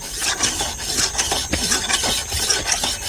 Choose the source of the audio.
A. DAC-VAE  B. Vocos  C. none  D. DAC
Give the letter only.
C